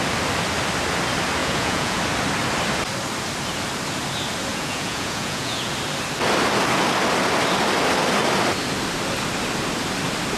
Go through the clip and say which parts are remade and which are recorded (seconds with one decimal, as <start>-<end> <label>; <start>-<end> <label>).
0.0-1.4 recorded; 1.4-2.0 remade; 2.0-4.5 recorded; 4.5-5.7 remade; 5.7-10.4 recorded

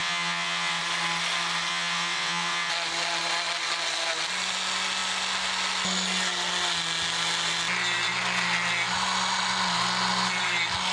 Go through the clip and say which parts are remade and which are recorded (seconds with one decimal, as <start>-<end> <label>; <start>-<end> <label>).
0.0-0.8 remade; 0.8-1.7 recorded; 1.7-2.7 remade; 2.7-10.9 recorded